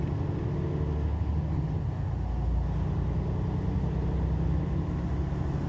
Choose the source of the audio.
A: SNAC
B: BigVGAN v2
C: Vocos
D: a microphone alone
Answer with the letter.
D